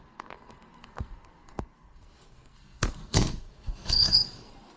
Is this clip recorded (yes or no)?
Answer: no